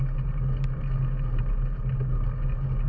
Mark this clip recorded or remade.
recorded